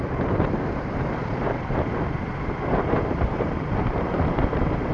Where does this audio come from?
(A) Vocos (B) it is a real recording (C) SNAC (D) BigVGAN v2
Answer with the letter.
D